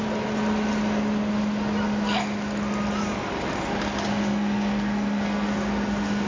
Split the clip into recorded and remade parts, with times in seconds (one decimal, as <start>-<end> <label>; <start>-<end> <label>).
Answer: 0.0-4.1 recorded; 4.1-5.5 remade; 5.5-6.3 recorded